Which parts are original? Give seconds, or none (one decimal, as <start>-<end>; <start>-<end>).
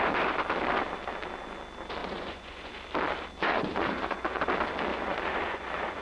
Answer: 0.0-2.0; 2.7-3.5; 4.4-4.9